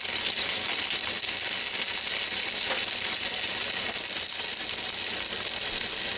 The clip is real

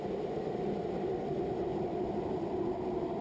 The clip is real